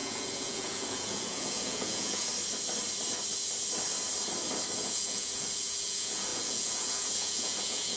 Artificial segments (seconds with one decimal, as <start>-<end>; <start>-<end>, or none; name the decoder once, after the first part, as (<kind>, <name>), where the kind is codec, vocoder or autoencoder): 0.0-2.3 (vocoder, Vocos); 4.8-8.0